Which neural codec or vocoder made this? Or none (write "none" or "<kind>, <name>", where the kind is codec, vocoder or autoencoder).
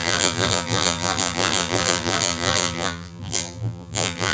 vocoder, BigVGAN v2